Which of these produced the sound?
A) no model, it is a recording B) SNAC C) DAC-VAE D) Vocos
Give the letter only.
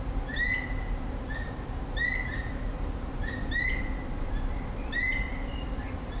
A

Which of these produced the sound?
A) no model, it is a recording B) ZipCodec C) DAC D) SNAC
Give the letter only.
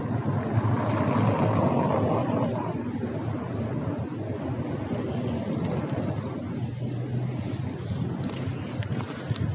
A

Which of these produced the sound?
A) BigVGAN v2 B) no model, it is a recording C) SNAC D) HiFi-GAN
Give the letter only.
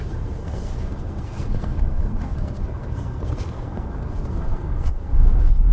C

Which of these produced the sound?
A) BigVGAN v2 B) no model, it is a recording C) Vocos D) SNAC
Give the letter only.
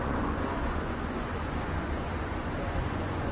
C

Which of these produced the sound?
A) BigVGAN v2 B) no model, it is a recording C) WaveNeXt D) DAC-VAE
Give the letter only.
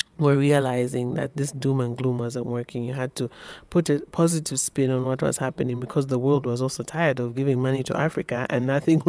C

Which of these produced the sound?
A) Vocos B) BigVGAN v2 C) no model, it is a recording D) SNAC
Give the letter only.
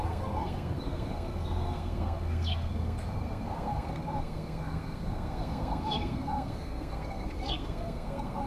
D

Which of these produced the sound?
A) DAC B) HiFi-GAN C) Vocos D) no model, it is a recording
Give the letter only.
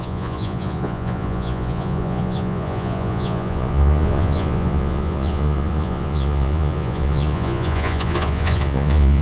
C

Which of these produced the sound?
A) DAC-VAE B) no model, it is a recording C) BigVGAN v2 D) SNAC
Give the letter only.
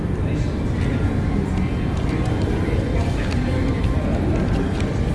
B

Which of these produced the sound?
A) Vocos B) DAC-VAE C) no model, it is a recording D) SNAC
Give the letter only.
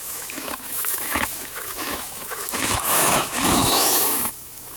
B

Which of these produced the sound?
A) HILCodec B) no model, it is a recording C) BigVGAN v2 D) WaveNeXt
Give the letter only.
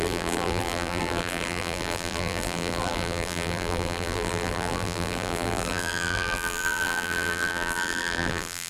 C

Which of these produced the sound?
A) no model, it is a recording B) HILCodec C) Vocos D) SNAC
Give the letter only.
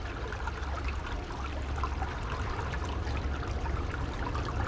A